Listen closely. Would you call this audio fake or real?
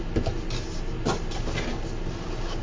real